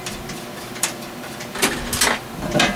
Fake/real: fake